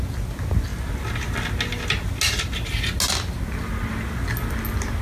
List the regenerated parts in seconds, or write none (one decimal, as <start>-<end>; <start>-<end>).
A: none